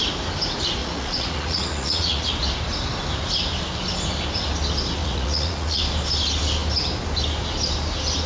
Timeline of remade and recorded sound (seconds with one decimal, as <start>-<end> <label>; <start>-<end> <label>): 0.0-0.8 recorded; 0.8-2.3 remade; 2.3-5.0 recorded; 5.0-5.8 remade; 5.8-8.3 recorded